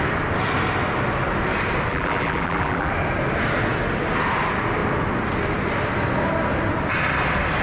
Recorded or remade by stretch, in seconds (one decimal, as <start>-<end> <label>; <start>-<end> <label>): 0.0-1.9 recorded; 1.9-2.9 remade; 2.9-7.6 recorded